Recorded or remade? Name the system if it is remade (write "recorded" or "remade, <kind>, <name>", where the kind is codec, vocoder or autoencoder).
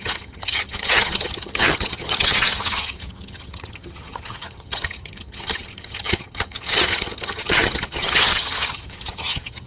remade, vocoder, HiFi-GAN